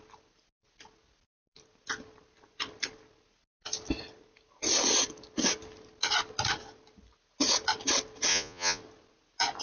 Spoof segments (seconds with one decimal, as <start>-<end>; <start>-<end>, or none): 8.3-8.8